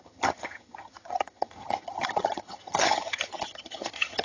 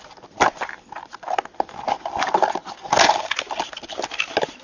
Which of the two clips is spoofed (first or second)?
first